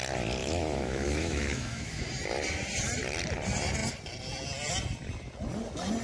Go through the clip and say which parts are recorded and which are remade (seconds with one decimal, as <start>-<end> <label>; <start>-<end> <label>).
0.0-0.4 recorded; 0.4-2.0 remade; 2.0-6.0 recorded